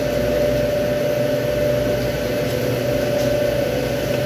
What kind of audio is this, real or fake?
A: real